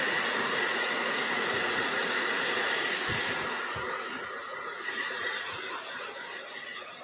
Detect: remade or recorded remade